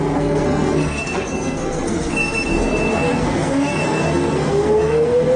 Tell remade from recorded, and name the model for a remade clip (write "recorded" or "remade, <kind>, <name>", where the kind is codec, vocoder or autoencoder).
remade, codec, SNAC